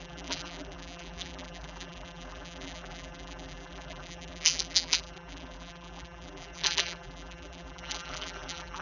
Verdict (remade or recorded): remade